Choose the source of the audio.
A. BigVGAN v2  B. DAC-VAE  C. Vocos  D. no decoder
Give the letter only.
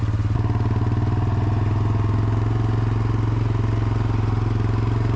D